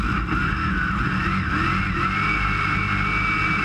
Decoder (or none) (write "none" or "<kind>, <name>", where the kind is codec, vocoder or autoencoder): none